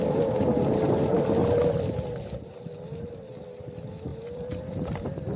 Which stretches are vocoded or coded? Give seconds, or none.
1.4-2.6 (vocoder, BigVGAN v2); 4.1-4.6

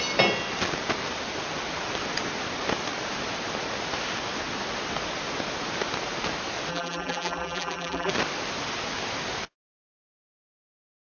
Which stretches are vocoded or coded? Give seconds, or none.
6.7-8.1 (vocoder, BigVGAN v2)

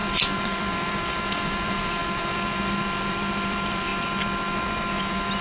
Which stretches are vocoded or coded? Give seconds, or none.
0.0-3.9 (vocoder, BigVGAN v2)

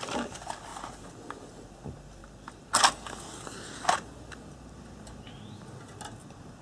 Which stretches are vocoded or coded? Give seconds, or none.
none

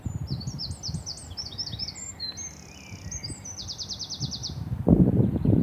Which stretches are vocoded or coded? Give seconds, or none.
4.4-5.0 (vocoder, BigVGAN v2)

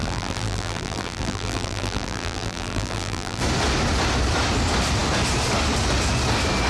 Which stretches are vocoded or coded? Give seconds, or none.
0.0-3.4 (vocoder, BigVGAN v2)